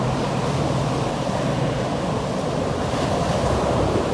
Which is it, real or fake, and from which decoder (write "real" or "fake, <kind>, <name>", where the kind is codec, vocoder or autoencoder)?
real